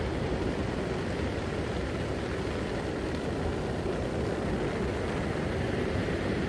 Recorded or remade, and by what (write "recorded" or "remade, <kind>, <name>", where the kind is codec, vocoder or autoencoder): recorded